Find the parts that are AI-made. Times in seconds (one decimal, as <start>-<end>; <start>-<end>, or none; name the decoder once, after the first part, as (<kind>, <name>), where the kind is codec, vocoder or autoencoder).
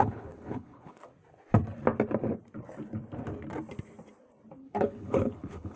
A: 0.0-1.1 (codec, HILCodec); 4.6-5.8